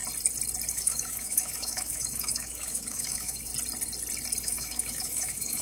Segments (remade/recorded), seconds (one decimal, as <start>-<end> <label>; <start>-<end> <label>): 0.0-0.7 recorded; 0.7-3.5 remade; 3.5-4.4 recorded; 4.4-5.6 remade